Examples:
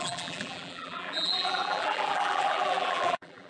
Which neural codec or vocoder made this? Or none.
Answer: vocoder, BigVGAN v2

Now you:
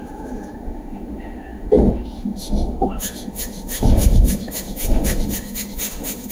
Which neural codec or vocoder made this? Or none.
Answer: autoencoder, DAC-VAE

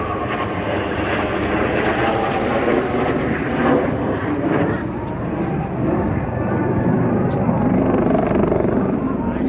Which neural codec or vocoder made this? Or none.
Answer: vocoder, BigVGAN v2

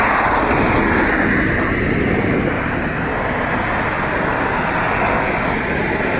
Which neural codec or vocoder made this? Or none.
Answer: none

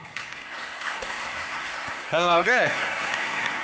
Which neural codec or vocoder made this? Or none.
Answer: codec, SNAC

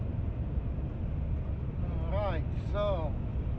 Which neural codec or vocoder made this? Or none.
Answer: none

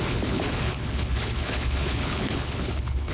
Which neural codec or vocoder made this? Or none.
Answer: codec, HILCodec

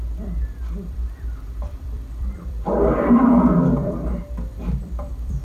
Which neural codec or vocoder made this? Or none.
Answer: vocoder, BigVGAN v2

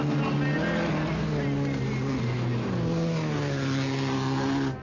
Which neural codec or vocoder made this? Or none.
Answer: none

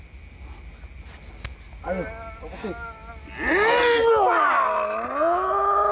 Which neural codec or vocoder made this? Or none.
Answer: none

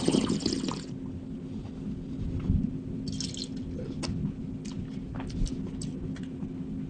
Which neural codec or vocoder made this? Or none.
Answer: none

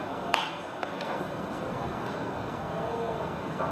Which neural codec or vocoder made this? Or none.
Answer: codec, SNAC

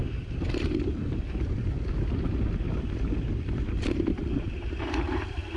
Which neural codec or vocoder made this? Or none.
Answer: none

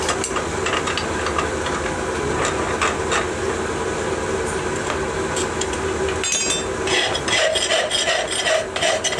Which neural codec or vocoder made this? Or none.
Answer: none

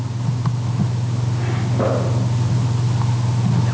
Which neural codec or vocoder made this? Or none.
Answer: none